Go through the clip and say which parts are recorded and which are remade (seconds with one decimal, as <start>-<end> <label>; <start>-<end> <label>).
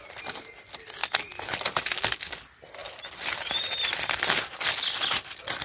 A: 0.0-5.6 recorded